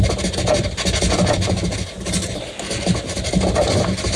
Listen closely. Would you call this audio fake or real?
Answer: real